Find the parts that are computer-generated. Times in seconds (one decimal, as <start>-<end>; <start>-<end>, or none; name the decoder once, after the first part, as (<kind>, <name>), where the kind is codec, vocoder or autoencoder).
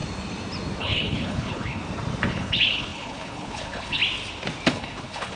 0.8-1.8 (codec, HILCodec); 2.3-4.0; 4.7-5.4